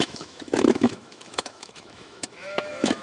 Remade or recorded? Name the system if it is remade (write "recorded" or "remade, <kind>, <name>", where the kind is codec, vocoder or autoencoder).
remade, autoencoder, DAC-VAE